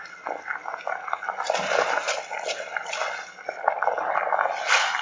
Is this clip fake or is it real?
real